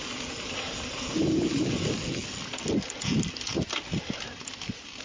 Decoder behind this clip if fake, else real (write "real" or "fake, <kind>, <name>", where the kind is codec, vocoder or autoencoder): real